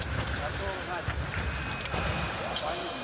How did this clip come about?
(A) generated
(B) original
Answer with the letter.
B